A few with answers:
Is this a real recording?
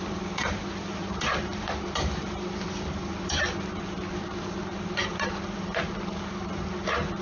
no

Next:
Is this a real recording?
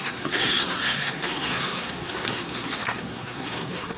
no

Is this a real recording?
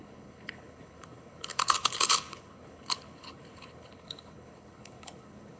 no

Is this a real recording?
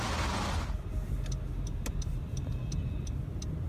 yes